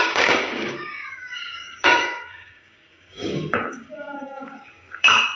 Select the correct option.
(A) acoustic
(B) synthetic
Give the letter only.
B